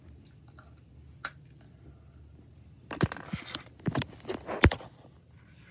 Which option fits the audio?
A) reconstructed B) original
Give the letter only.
B